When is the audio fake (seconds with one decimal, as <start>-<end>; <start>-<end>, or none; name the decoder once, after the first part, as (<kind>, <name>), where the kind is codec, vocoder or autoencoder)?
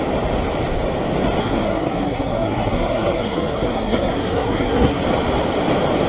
1.4-5.0 (codec, SNAC)